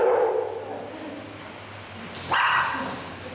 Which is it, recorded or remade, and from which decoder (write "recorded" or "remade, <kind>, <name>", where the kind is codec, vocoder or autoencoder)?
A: recorded